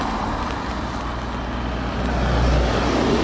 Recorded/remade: recorded